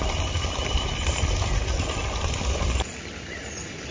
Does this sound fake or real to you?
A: real